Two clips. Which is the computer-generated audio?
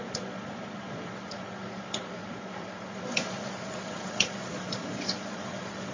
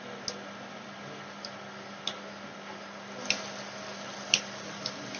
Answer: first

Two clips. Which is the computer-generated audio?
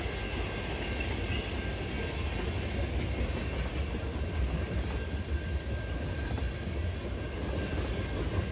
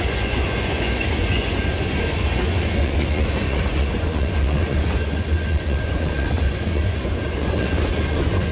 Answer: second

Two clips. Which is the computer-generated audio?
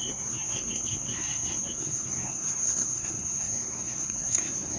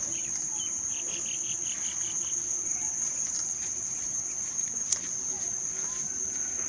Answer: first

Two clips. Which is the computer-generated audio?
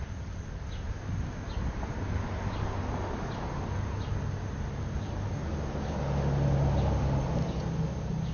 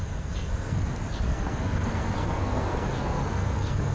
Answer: second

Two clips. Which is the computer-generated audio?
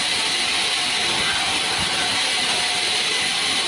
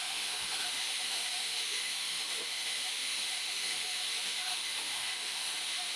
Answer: second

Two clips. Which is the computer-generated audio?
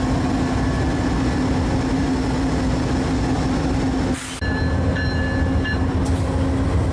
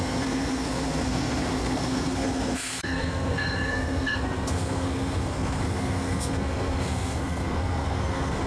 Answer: second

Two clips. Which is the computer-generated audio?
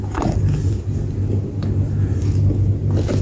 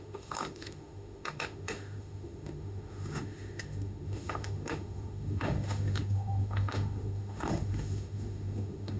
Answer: second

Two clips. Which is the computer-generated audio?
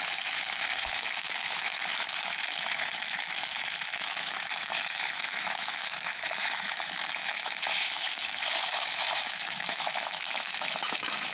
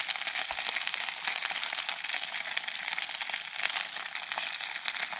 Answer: first